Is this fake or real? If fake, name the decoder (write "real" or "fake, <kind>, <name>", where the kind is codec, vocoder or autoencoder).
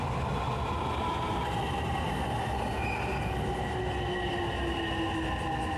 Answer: real